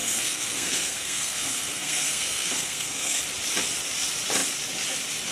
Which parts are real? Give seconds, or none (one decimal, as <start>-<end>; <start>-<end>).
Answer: 3.2-5.3